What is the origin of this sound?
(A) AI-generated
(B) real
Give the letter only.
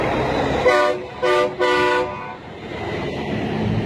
B